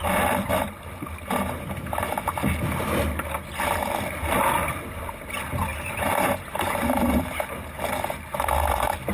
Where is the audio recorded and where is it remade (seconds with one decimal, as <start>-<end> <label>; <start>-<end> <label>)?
0.0-5.7 recorded; 5.7-7.3 remade; 7.3-9.1 recorded